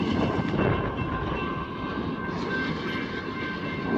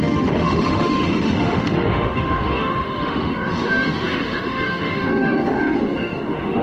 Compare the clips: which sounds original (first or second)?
first